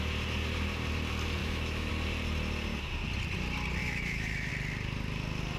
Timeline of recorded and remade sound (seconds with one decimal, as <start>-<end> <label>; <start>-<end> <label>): 0.0-1.4 recorded; 1.4-1.9 remade; 1.9-3.8 recorded; 3.8-4.5 remade; 4.5-5.6 recorded